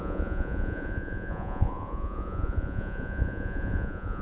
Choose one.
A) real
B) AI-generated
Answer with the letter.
B